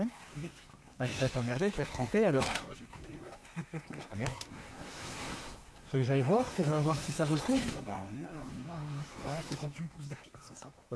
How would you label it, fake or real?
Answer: fake